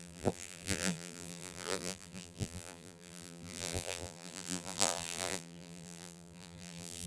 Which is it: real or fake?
fake